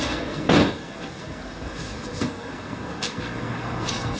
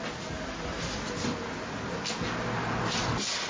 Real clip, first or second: second